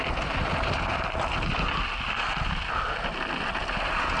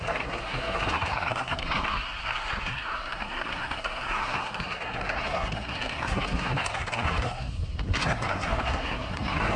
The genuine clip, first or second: first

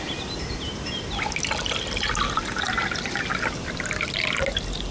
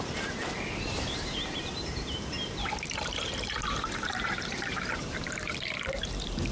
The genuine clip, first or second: first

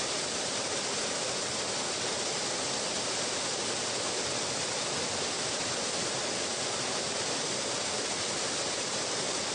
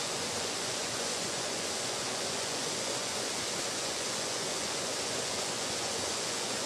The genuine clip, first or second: first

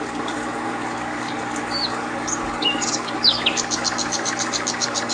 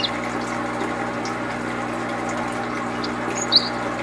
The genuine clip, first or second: second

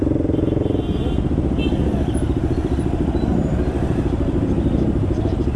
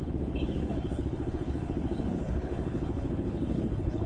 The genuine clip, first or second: first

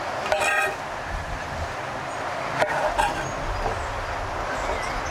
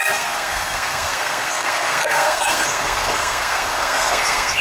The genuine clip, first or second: first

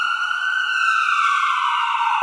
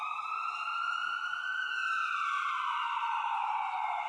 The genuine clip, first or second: second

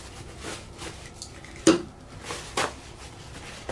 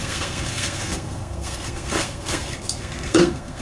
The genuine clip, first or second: first